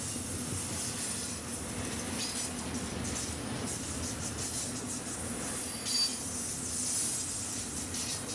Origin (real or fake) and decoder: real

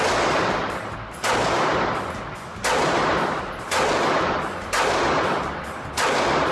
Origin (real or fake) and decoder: real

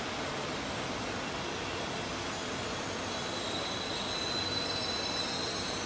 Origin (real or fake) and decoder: real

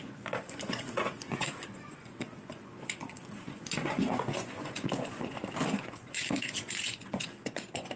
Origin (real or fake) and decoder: fake, vocoder, Vocos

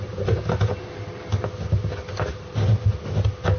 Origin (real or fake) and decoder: real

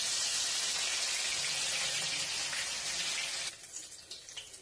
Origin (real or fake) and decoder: real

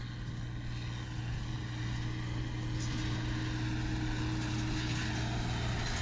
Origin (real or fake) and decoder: real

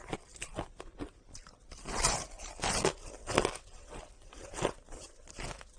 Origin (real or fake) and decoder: real